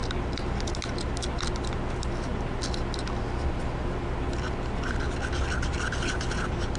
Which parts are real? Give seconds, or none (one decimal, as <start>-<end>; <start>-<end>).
0.0-6.8